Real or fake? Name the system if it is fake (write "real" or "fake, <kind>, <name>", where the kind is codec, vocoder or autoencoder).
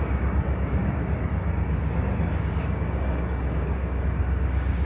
fake, codec, DAC